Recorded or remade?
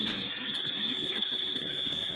remade